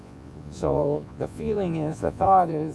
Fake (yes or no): yes